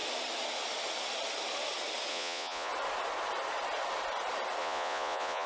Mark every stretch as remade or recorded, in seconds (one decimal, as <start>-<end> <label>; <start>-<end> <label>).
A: 0.0-2.1 recorded; 2.1-2.7 remade; 2.7-4.6 recorded; 4.6-5.5 remade